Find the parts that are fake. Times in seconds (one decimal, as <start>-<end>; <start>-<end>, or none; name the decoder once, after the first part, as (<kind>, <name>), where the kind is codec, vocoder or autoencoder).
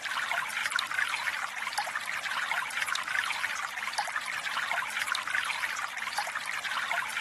none